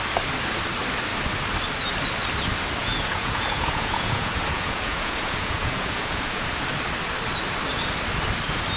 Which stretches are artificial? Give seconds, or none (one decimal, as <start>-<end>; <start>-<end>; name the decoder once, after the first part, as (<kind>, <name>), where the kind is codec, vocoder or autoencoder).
2.8-6.5 (vocoder, Vocos)